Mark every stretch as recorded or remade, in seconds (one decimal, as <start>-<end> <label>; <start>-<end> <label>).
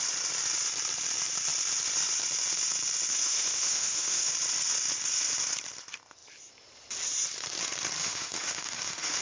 0.0-3.1 recorded; 3.1-4.3 remade; 4.3-8.0 recorded; 8.0-9.2 remade